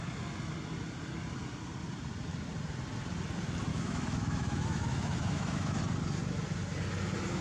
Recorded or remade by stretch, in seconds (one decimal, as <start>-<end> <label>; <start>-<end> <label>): 0.0-3.7 recorded; 3.7-5.8 remade; 5.8-7.4 recorded